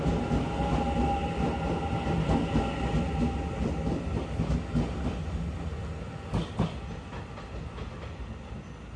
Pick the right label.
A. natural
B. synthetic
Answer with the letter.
A